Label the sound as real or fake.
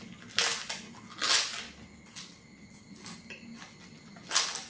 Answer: real